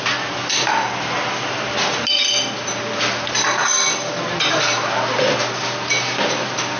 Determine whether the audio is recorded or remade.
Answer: recorded